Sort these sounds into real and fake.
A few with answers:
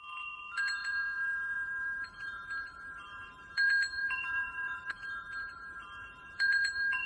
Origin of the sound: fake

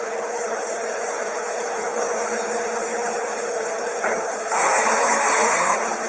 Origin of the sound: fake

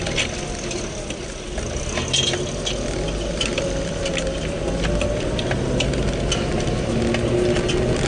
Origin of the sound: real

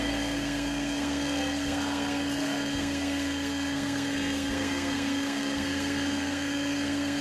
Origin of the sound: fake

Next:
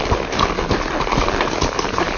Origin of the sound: real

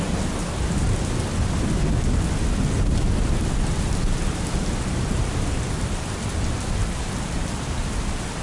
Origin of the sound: real